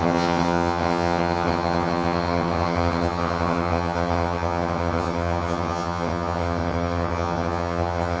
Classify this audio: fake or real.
fake